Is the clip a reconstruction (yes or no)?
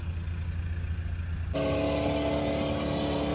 no